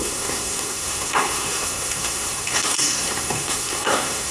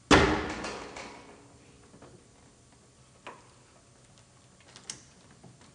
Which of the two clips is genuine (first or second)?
second